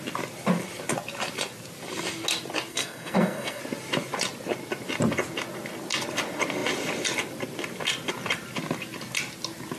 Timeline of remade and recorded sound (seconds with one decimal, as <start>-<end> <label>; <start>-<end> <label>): 0.0-2.7 recorded; 2.7-3.6 remade; 3.6-9.8 recorded

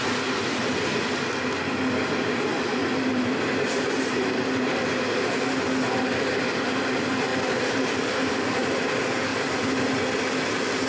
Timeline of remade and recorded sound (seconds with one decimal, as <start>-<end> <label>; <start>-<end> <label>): 0.0-2.5 recorded; 2.5-5.3 remade; 5.3-7.3 recorded; 7.3-8.9 remade; 8.9-10.9 recorded

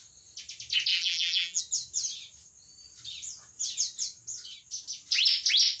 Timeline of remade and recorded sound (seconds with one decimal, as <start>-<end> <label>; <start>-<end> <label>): 0.0-0.9 recorded; 0.9-1.6 remade; 1.6-5.8 recorded

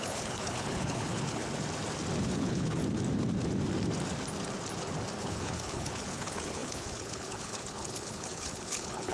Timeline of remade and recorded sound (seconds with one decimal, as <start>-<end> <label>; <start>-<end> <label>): 0.0-1.4 remade; 1.4-2.2 recorded; 2.2-2.8 remade; 2.8-5.2 recorded; 5.2-9.1 remade

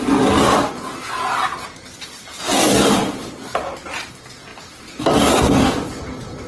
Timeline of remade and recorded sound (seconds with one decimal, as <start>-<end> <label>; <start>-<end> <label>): 0.0-3.0 recorded; 3.0-3.8 remade; 3.8-4.5 recorded; 4.5-5.2 remade; 5.2-6.5 recorded